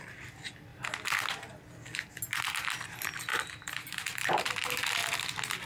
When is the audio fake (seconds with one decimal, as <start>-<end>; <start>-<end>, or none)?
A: 3.3-4.4